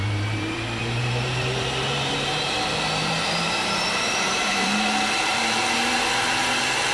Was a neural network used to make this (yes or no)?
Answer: yes